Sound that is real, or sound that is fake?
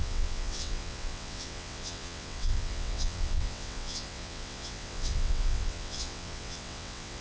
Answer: fake